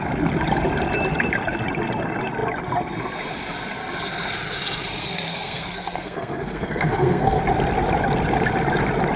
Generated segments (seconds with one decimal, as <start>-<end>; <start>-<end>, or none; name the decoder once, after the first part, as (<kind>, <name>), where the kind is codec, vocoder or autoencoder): 5.0-7.4 (codec, SNAC)